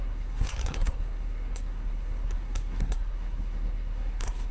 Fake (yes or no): yes